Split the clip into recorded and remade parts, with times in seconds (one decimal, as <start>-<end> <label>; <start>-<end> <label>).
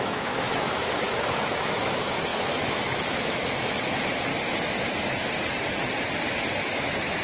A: 0.0-4.3 remade; 4.3-6.5 recorded; 6.5-7.2 remade